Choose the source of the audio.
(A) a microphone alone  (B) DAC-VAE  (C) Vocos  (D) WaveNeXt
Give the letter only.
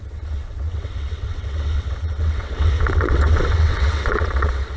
D